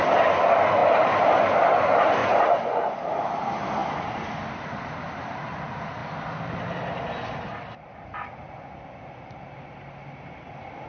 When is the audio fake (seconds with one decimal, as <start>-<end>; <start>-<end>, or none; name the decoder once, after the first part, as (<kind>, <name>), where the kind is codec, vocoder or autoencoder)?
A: 2.2-3.0 (vocoder, Vocos)